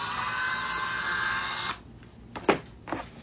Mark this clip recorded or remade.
recorded